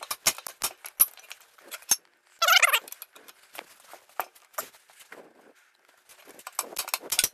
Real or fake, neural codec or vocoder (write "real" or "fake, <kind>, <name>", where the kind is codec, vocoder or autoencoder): real